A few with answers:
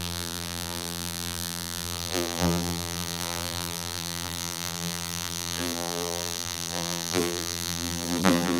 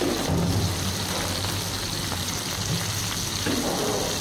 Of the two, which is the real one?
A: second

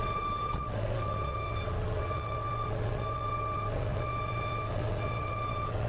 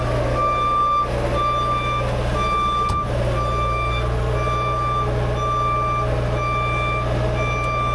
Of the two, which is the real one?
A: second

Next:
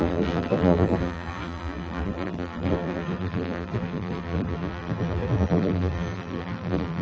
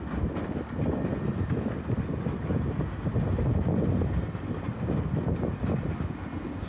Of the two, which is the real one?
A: second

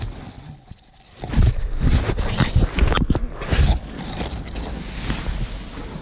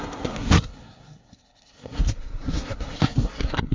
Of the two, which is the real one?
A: first